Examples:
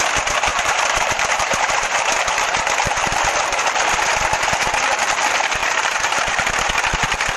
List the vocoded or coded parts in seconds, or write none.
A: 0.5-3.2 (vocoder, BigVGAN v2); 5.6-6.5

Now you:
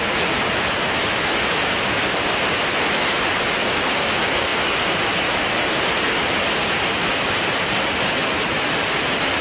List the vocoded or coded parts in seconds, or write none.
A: none

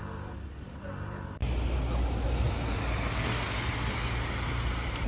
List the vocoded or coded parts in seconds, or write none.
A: 0.0-1.4 (vocoder, BigVGAN v2); 4.5-5.1

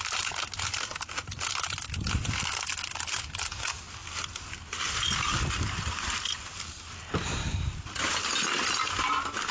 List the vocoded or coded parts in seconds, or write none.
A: none